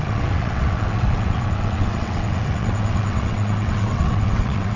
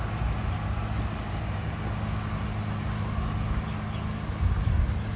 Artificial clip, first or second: first